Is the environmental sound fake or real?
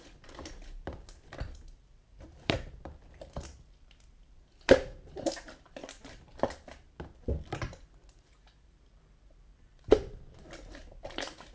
fake